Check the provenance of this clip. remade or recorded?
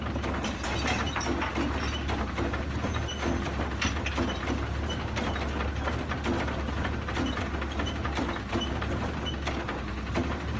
recorded